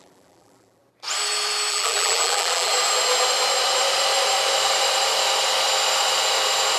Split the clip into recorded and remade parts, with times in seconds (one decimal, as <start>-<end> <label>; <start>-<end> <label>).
0.0-0.8 remade; 0.8-1.7 recorded; 1.7-2.7 remade; 2.7-6.8 recorded

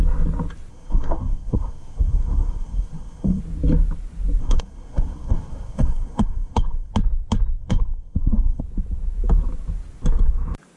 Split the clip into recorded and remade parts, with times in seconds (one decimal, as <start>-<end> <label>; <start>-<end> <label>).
0.0-0.7 recorded; 0.7-3.4 remade; 3.4-4.4 recorded; 4.4-6.9 remade; 6.9-7.6 recorded; 7.6-8.6 remade; 8.6-10.8 recorded